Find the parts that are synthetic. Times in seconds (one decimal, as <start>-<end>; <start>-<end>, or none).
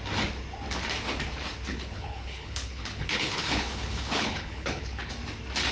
1.7-5.1